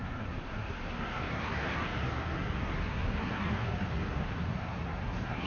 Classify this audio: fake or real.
fake